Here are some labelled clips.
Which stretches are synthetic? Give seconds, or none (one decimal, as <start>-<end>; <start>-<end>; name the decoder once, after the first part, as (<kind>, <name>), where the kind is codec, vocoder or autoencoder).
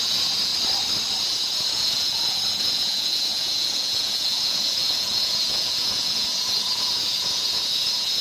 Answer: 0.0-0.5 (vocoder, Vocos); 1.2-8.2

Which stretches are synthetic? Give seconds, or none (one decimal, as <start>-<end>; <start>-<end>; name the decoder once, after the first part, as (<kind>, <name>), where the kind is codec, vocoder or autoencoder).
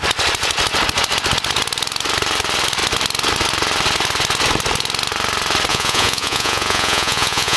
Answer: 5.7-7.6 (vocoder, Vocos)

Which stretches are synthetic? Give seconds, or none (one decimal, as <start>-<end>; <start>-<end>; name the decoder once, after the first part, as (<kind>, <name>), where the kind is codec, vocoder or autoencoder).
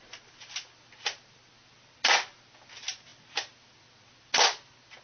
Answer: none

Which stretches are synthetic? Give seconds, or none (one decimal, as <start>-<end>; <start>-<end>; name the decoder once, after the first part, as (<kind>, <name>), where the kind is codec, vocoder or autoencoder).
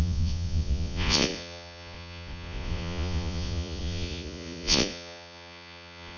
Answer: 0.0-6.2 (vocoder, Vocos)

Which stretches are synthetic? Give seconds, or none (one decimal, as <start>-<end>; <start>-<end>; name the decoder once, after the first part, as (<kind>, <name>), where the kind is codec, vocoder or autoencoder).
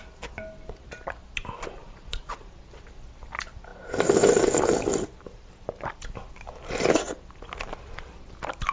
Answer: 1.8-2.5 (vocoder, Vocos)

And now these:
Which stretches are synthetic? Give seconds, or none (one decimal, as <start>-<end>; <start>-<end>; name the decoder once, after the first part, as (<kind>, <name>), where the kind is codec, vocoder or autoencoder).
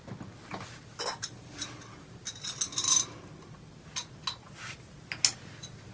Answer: none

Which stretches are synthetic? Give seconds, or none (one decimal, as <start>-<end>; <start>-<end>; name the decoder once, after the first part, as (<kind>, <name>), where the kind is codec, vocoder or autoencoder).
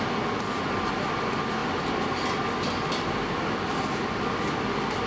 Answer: none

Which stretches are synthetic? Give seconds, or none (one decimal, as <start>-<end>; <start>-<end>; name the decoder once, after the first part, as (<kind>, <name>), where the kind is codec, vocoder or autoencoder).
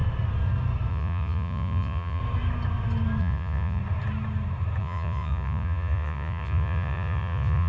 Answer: 0.9-2.2 (vocoder, Vocos); 3.2-3.8; 4.8-7.7